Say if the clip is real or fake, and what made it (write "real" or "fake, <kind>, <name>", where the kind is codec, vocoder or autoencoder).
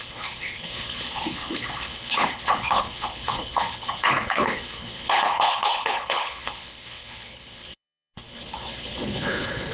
fake, codec, HILCodec